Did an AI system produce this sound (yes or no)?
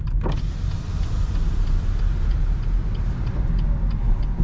no